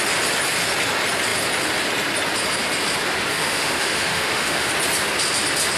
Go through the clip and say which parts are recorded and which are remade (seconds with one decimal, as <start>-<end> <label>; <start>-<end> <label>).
0.0-3.3 recorded; 3.3-4.7 remade; 4.7-5.8 recorded